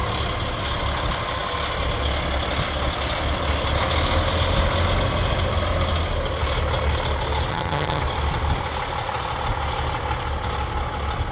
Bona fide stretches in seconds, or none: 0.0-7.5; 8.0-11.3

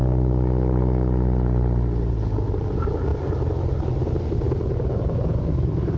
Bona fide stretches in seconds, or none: 0.0-6.0

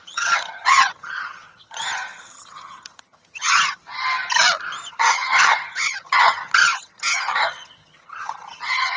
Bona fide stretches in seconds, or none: 3.8-4.9